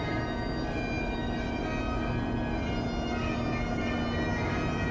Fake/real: real